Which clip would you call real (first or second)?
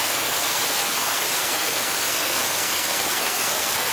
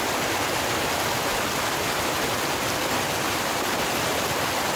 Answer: second